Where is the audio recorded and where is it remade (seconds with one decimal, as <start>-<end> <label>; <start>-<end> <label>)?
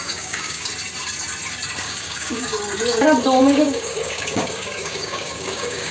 0.0-0.7 remade; 0.7-1.8 recorded; 1.8-2.5 remade; 2.5-3.4 recorded; 3.4-5.9 remade